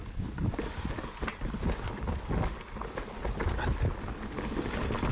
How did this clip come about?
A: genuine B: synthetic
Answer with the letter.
A